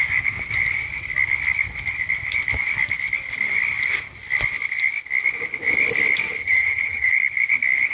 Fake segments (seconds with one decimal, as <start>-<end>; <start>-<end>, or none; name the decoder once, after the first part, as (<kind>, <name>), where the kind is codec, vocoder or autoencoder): 6.4-7.1 (vocoder, HiFi-GAN)

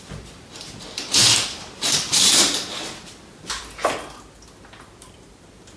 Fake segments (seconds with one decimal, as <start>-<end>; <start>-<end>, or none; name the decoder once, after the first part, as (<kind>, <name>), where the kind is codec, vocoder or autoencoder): none

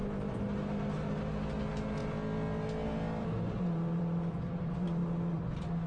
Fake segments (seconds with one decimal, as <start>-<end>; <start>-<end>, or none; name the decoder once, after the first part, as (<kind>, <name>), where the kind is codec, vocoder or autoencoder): none

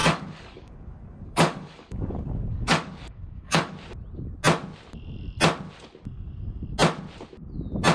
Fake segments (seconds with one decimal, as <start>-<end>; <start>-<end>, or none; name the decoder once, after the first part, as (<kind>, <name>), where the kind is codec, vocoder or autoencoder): 0.0-3.7 (codec, DAC)

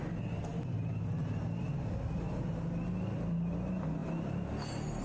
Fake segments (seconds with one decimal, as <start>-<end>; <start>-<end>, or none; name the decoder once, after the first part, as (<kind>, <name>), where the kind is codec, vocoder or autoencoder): none

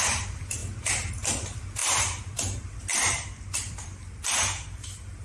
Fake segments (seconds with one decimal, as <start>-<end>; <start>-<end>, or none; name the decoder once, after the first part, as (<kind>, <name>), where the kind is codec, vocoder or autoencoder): 1.8-2.4 (vocoder, BigVGAN v2); 2.9-4.2

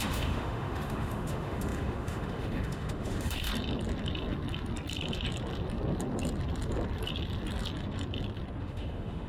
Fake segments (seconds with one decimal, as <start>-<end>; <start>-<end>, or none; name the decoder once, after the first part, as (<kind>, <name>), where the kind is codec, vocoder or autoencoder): 0.0-3.5 (autoencoder, DAC-VAE); 8.6-9.3

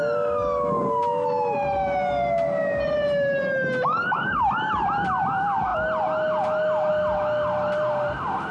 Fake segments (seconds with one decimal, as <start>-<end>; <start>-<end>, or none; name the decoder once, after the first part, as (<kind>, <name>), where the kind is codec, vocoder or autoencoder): none